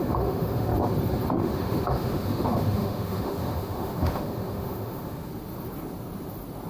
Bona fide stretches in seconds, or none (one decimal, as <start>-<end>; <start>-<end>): 0.7-1.3; 5.3-6.7